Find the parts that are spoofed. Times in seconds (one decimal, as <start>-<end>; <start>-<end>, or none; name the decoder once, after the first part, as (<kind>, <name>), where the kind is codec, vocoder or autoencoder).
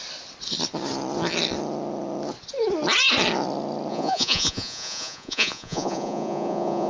3.9-6.9 (vocoder, Vocos)